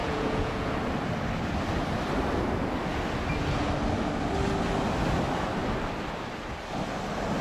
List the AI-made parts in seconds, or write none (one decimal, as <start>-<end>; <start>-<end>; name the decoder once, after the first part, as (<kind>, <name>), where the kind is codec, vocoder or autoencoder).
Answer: 0.0-0.7 (vocoder, Vocos)